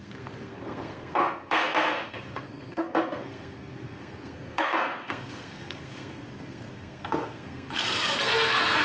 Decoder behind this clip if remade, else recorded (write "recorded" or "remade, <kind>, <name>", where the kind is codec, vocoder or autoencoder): remade, codec, SNAC